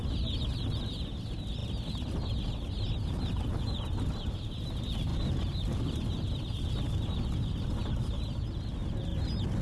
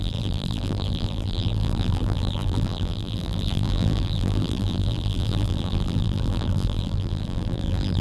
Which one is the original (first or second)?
first